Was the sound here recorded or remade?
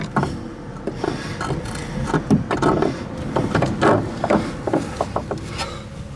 recorded